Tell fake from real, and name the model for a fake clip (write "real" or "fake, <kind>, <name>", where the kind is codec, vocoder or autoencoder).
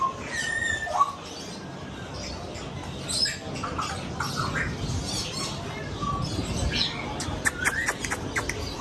real